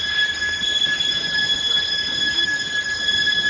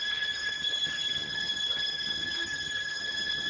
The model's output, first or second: second